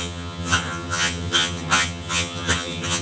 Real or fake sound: fake